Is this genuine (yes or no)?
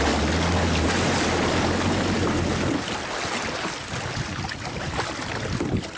yes